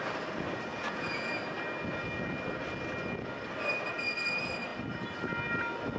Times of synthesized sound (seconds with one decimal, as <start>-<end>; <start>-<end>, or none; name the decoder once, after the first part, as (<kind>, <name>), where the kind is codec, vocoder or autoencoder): 0.7-1.3 (vocoder, Vocos)

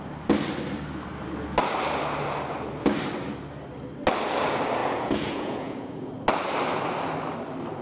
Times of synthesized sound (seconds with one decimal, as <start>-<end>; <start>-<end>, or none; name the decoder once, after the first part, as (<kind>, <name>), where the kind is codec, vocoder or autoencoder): 4.8-6.1 (vocoder, Vocos)

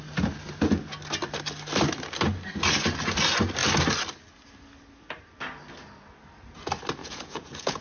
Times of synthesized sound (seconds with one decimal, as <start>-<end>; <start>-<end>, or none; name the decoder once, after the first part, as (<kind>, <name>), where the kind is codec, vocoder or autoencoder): 7.0-7.8 (vocoder, Vocos)

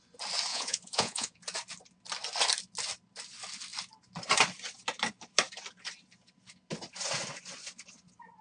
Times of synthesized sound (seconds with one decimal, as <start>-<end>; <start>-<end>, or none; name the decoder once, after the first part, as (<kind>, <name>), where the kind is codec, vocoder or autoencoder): 0.5-1.4 (vocoder, Vocos)